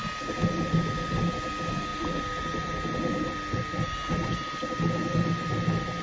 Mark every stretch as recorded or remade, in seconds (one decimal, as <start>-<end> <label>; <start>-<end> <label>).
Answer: 0.0-6.0 recorded